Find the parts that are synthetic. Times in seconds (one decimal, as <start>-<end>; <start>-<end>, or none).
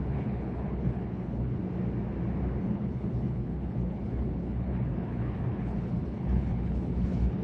0.0-1.6; 2.6-7.4